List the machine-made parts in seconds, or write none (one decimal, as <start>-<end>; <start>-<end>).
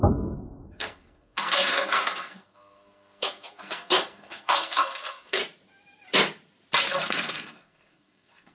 0.0-5.4; 6.9-8.5